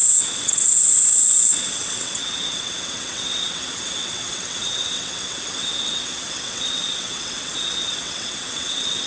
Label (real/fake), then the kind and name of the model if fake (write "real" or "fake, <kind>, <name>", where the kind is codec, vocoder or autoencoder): fake, vocoder, WaveNeXt